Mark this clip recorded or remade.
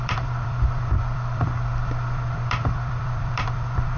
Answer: remade